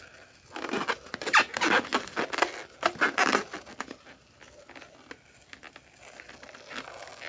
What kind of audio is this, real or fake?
real